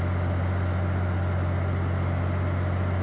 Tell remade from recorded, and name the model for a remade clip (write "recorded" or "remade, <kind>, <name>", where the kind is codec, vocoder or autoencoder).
recorded